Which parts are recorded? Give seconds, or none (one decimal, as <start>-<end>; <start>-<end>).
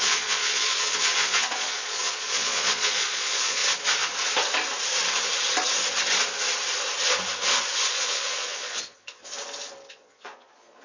3.6-7.9; 9.3-9.9